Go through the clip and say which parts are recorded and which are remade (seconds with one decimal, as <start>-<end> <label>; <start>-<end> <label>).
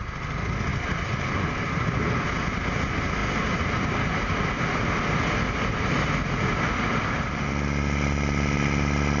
0.0-9.2 recorded